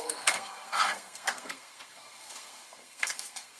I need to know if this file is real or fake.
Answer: fake